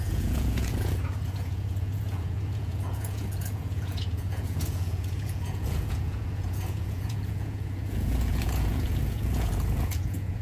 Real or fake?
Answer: fake